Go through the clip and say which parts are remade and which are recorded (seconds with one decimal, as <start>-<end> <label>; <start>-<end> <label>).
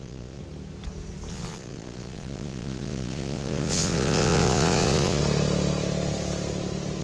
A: 0.0-0.4 remade; 0.4-1.3 recorded; 1.3-5.2 remade; 5.2-7.0 recorded